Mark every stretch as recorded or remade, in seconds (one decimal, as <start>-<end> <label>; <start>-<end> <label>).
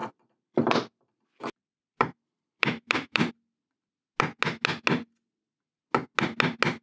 0.0-3.3 remade; 3.3-6.8 recorded